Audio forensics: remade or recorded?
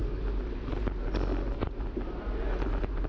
recorded